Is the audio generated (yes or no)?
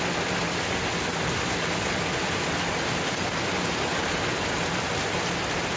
no